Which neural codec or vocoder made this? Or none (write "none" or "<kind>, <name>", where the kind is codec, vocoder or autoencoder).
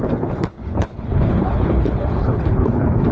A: codec, HILCodec